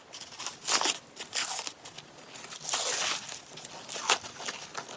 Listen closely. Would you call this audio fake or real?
real